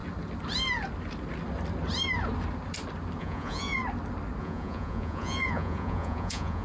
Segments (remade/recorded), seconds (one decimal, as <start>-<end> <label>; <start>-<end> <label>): 0.0-3.2 recorded; 3.2-3.8 remade; 3.8-4.4 recorded; 4.4-6.6 remade